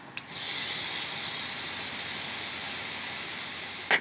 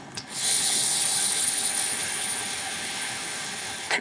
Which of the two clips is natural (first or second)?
first